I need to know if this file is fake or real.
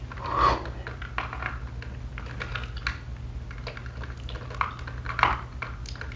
real